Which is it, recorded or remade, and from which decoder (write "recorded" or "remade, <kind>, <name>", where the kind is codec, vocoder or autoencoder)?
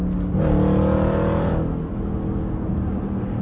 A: recorded